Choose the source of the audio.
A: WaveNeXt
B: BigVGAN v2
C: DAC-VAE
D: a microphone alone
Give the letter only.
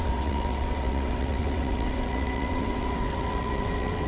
A